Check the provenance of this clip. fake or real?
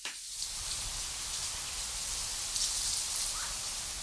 real